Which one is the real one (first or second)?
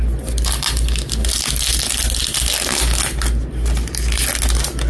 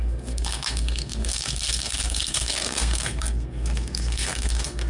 first